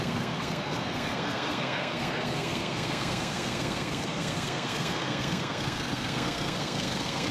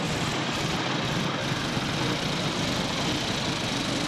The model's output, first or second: first